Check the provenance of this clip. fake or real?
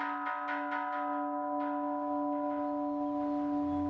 real